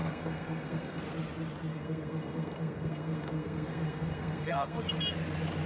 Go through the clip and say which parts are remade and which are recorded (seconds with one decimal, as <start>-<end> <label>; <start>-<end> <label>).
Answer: 0.0-1.0 remade; 1.0-1.7 recorded; 1.7-4.8 remade; 4.8-5.7 recorded